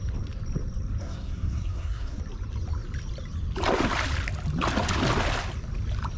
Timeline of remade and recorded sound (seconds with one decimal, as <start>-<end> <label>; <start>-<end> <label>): 0.0-1.0 recorded; 1.0-2.2 remade; 2.2-6.2 recorded